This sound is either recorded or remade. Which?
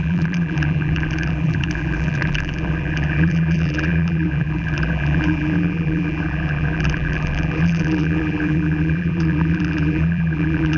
remade